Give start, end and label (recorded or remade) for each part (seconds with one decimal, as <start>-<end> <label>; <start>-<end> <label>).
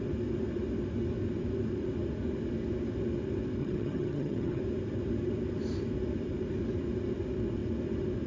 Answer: 0.0-3.6 recorded; 3.6-4.6 remade; 4.6-8.3 recorded